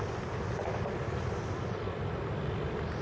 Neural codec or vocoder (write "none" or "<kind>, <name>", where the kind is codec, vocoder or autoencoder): none